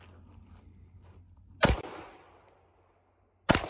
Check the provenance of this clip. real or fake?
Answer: real